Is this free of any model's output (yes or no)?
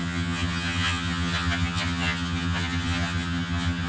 no